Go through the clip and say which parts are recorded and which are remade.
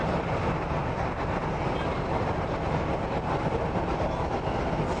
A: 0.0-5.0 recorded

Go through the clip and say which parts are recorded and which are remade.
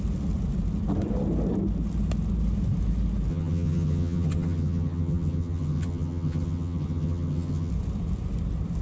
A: 0.0-3.3 recorded; 3.3-7.7 remade; 7.7-8.8 recorded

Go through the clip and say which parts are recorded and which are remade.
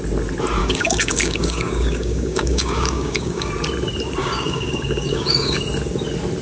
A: 0.0-0.6 recorded; 0.6-3.5 remade; 3.5-4.2 recorded; 4.2-5.6 remade; 5.6-6.4 recorded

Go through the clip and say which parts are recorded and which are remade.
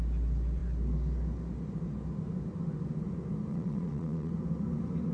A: 0.0-3.5 recorded; 3.5-4.3 remade; 4.3-5.1 recorded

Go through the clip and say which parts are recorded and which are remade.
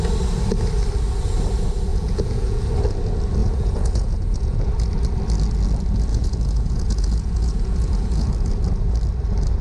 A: 0.0-1.9 recorded; 1.9-2.6 remade; 2.6-3.4 recorded; 3.4-4.7 remade; 4.7-6.1 recorded; 6.1-8.3 remade; 8.3-9.6 recorded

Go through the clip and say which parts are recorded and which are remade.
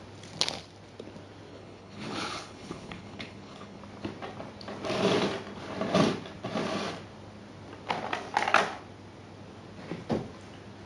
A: 0.0-1.5 recorded; 1.5-3.8 remade; 3.8-10.9 recorded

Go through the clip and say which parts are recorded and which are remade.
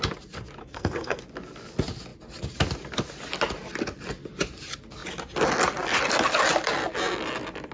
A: 0.0-0.6 recorded; 0.6-1.2 remade; 1.2-7.7 recorded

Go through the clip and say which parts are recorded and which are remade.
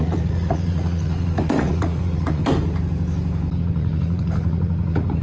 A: 0.0-2.4 remade; 2.4-3.6 recorded; 3.6-5.2 remade